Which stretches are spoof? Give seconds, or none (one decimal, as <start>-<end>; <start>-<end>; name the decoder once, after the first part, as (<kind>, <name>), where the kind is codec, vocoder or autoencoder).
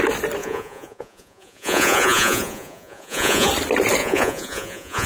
0.4-3.5 (vocoder, Vocos); 4.0-5.1